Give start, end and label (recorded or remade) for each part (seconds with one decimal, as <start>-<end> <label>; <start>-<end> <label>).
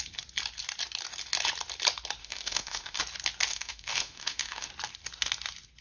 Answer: 0.0-2.2 recorded; 2.2-3.0 remade; 3.0-3.5 recorded; 3.5-4.7 remade; 4.7-5.8 recorded